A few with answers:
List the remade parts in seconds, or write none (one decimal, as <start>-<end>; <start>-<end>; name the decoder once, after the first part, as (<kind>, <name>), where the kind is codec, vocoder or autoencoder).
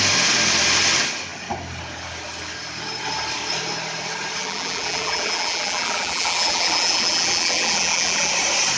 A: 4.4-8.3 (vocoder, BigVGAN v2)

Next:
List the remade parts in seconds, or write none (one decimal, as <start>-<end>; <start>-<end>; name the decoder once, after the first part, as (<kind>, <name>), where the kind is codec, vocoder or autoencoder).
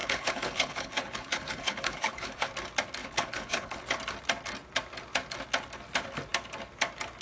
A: 0.0-2.5 (codec, HILCodec); 3.0-3.8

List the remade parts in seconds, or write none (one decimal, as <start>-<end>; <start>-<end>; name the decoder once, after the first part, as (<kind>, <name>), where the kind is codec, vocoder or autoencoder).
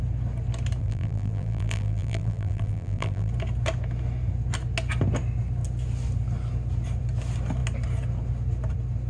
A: 0.8-3.3 (vocoder, BigVGAN v2)